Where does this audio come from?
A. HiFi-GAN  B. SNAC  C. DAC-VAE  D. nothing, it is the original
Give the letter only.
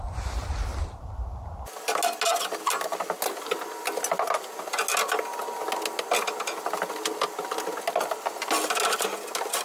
D